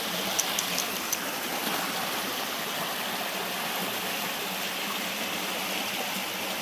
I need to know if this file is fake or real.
real